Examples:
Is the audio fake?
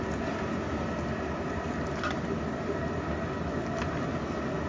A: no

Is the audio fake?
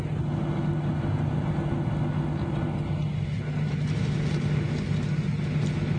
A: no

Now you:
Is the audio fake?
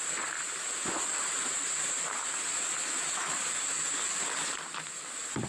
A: no